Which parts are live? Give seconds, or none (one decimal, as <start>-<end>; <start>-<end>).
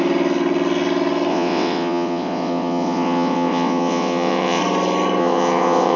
0.0-1.3; 4.6-5.2